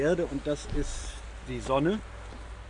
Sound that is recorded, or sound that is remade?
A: recorded